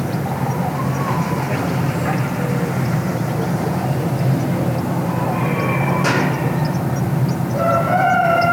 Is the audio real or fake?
real